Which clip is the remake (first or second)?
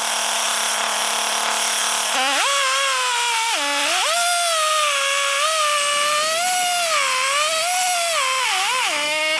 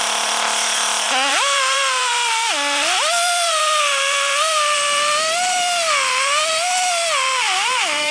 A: second